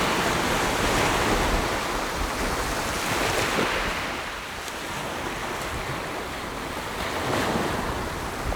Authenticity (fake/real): real